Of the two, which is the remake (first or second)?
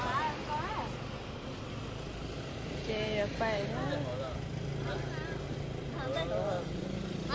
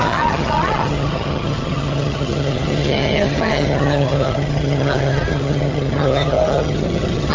second